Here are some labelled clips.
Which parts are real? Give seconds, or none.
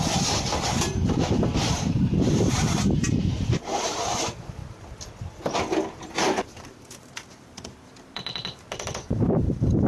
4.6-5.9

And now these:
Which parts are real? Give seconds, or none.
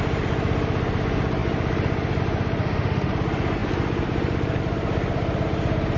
0.0-2.6; 3.1-6.0